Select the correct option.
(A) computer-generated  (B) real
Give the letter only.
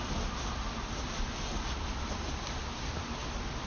A